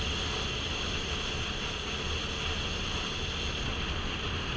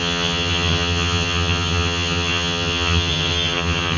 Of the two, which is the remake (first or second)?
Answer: second